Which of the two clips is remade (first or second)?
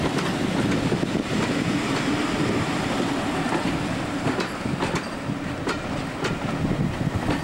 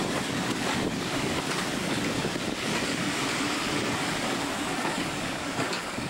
second